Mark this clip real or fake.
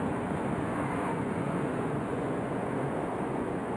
fake